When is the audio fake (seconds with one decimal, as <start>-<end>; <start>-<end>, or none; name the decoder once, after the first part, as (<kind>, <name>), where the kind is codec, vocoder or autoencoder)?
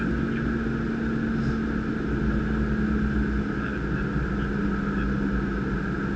none